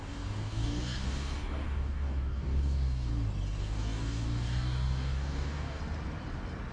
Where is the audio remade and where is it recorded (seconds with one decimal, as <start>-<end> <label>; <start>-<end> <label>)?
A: 0.0-3.1 remade; 3.1-3.6 recorded; 3.6-5.8 remade; 5.8-6.7 recorded